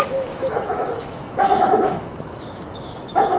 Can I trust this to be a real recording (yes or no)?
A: no